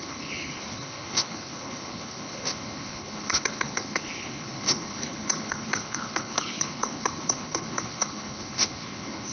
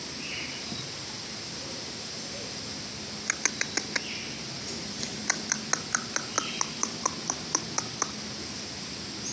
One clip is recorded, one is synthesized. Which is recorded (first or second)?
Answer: second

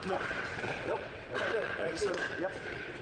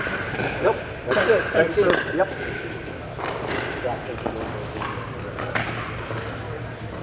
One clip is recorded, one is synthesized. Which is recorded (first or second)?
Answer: second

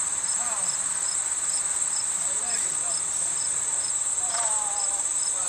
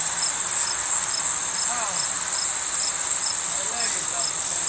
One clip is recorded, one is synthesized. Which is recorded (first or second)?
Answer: second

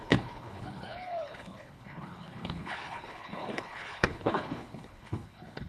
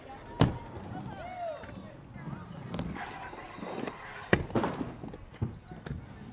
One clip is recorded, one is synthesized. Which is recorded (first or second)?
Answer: second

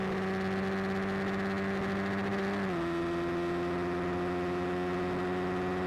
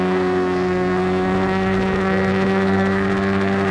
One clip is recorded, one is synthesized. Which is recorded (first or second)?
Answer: first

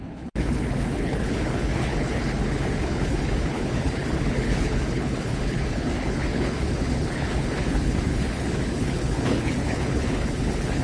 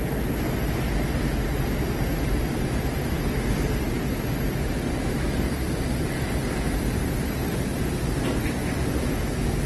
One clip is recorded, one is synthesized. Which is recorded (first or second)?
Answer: second